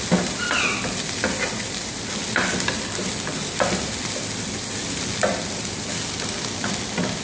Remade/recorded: recorded